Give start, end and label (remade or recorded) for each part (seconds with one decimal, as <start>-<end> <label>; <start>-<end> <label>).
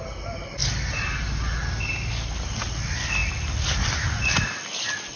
0.0-5.2 recorded